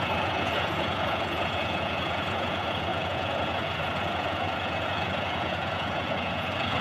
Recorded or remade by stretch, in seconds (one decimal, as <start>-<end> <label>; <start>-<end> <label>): 0.0-6.8 remade